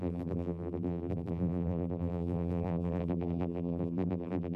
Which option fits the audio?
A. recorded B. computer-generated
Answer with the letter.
B